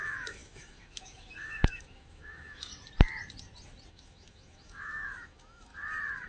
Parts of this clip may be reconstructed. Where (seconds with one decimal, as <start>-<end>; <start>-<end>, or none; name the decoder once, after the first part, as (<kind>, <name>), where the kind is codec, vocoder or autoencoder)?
0.0-2.7 (autoencoder, DAC-VAE); 3.9-5.7